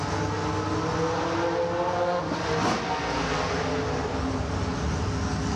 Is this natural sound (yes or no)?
yes